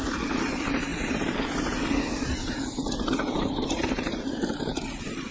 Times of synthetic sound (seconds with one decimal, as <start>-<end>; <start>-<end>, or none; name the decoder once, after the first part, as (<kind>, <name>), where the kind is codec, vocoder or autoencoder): none